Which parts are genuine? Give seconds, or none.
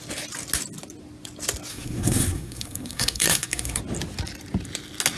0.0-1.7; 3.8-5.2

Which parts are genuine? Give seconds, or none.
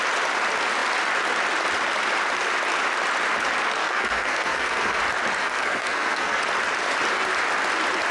0.0-3.8; 5.0-5.4; 6.4-8.1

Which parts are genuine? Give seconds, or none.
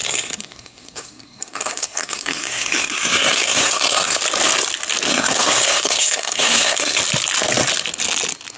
4.2-5.1; 7.0-8.6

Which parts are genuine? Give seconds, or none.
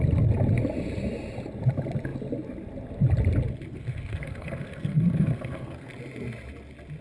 0.0-3.7; 5.9-7.0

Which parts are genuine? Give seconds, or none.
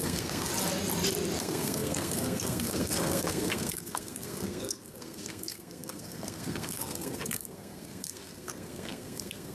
0.5-1.4